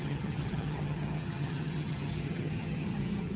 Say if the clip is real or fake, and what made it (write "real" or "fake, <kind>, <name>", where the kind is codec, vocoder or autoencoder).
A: fake, vocoder, HiFi-GAN